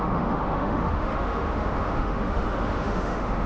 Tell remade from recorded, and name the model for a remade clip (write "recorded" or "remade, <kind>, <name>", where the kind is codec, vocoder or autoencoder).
remade, autoencoder, DAC-VAE